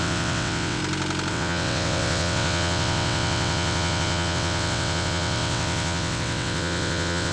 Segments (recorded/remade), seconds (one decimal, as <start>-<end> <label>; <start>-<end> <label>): 0.0-0.8 remade; 0.8-1.3 recorded; 1.3-7.3 remade